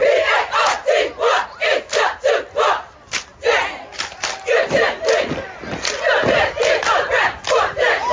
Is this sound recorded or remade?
recorded